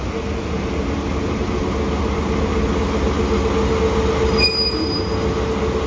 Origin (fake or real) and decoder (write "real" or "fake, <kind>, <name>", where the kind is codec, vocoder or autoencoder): real